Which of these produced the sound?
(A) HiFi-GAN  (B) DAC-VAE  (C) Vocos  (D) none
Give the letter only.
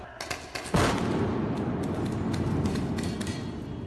D